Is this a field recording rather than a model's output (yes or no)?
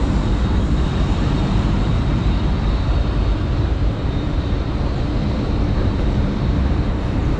no